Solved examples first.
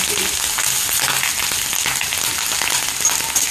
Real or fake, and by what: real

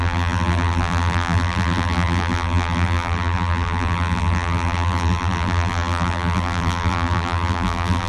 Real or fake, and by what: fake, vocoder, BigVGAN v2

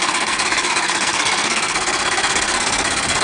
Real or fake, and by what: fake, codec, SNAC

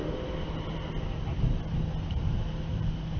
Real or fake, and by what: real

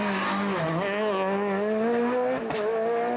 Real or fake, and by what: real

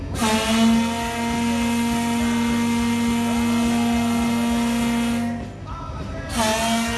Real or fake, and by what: real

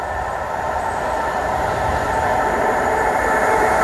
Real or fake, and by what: fake, vocoder, BigVGAN v2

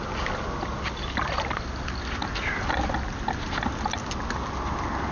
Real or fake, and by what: real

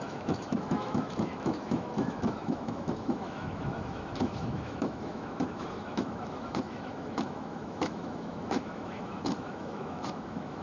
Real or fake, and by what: fake, autoencoder, DAC-VAE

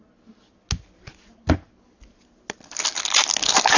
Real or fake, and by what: real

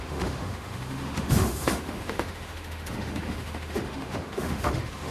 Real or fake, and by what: fake, autoencoder, DAC-VAE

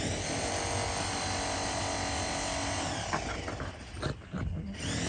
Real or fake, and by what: real